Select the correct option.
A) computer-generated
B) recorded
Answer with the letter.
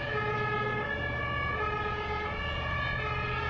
B